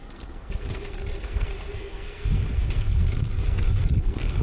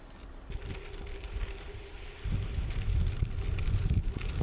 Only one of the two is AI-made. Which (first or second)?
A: first